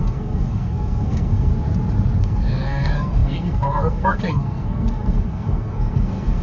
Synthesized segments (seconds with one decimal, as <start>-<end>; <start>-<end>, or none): 0.0-1.5; 2.2-6.4